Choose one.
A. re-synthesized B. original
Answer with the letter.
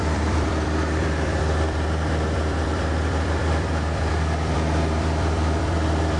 A